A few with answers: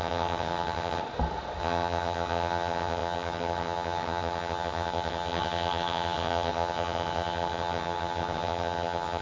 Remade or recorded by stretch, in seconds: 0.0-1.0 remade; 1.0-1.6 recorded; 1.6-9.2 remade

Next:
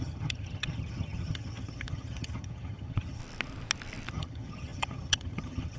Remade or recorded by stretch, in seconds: 0.0-3.2 remade; 3.2-4.1 recorded; 4.1-5.8 remade

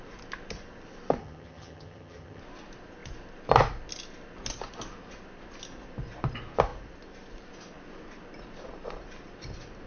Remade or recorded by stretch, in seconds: 0.0-1.2 recorded; 1.2-2.4 remade; 2.4-9.9 recorded

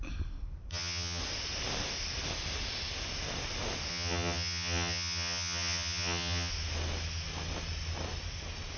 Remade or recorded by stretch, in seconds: 0.0-0.7 recorded; 0.7-1.2 remade; 1.2-3.9 recorded; 3.9-6.5 remade; 6.5-8.8 recorded

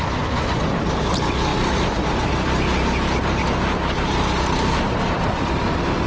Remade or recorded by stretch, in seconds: 0.0-6.1 recorded

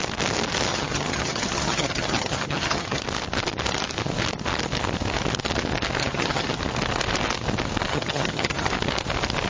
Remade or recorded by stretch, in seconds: 0.0-0.7 recorded; 0.7-3.0 remade; 3.0-6.0 recorded; 6.0-6.6 remade; 6.6-7.9 recorded; 7.9-8.7 remade; 8.7-9.5 recorded

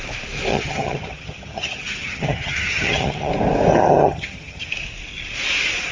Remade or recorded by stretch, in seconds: 0.0-0.5 recorded; 0.5-3.3 remade; 3.3-3.7 recorded; 3.7-4.7 remade; 4.7-5.9 recorded

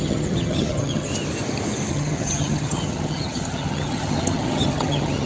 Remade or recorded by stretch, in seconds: 0.0-1.1 remade; 1.1-1.9 recorded; 1.9-5.3 remade